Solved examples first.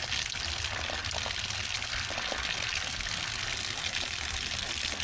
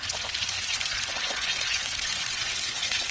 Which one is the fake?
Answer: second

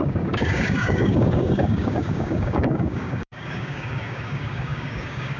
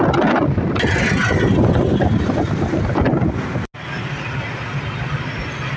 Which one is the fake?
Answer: first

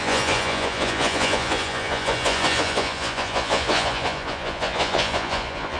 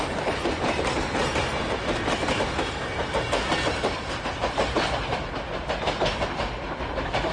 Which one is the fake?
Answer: first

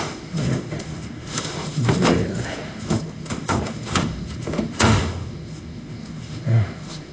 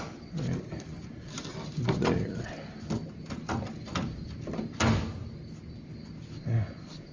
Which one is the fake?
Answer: first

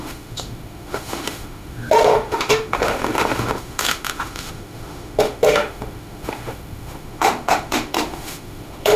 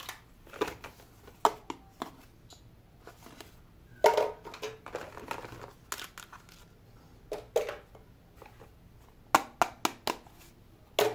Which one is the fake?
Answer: first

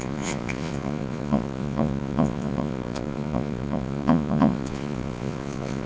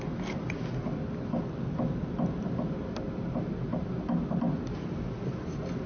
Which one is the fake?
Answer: first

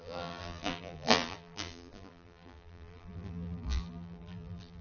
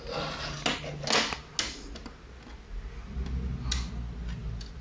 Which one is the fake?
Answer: first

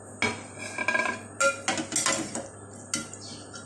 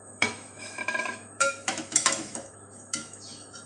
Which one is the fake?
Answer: second